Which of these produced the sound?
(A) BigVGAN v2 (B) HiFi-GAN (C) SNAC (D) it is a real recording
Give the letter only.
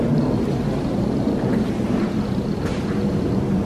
A